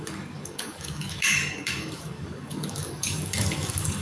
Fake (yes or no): yes